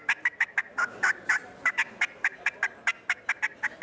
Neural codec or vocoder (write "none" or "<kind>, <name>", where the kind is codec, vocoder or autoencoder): none